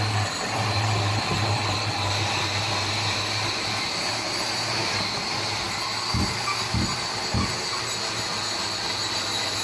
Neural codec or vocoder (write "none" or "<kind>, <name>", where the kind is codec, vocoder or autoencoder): none